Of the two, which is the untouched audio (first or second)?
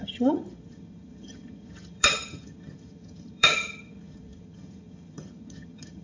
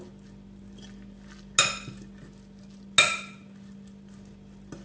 second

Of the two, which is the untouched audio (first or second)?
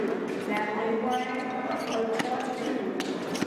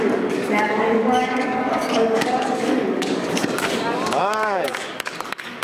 first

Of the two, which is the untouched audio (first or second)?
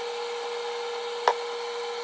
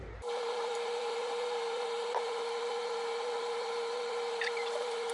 first